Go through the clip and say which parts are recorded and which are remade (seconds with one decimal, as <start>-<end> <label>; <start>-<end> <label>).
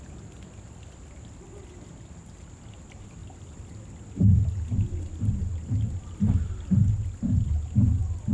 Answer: 0.0-8.3 recorded